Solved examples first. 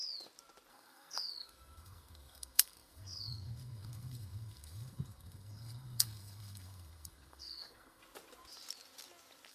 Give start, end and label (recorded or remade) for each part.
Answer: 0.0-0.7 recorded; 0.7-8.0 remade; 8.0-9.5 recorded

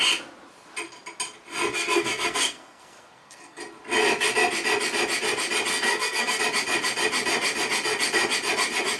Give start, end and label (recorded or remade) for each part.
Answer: 0.0-1.7 recorded; 1.7-3.6 remade; 3.6-5.7 recorded; 5.7-6.4 remade; 6.4-9.0 recorded

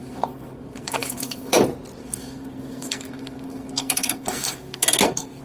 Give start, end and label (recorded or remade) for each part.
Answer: 0.0-1.6 remade; 1.6-2.0 recorded; 2.0-5.4 remade

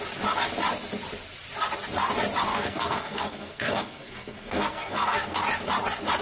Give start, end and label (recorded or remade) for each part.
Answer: 0.0-2.5 recorded; 2.5-5.4 remade; 5.4-6.2 recorded

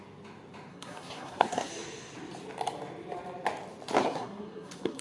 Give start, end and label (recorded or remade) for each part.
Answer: 0.0-0.7 recorded; 0.7-1.7 remade; 1.7-4.0 recorded; 4.0-5.0 remade

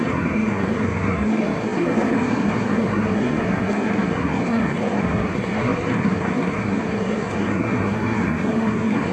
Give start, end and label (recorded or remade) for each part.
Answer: 0.0-9.1 remade

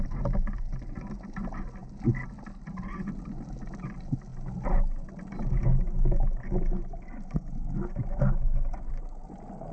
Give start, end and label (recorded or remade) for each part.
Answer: 0.0-9.7 recorded

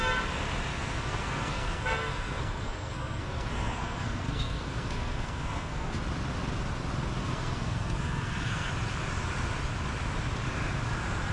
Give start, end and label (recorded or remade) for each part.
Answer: 0.0-0.7 recorded; 0.7-6.0 remade; 6.0-7.2 recorded; 7.2-8.7 remade; 8.7-11.3 recorded